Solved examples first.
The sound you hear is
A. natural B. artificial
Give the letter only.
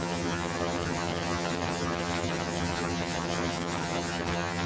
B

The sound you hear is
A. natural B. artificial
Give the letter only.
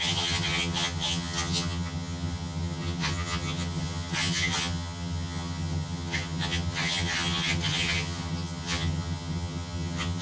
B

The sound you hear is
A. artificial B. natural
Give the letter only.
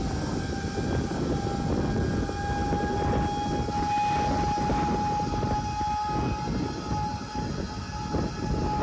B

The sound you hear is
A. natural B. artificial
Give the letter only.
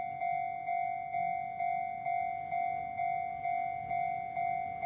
A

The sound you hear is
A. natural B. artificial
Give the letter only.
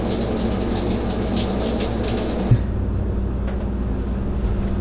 A